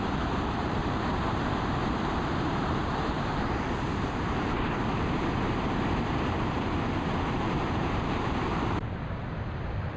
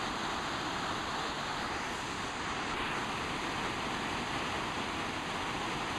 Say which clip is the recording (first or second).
second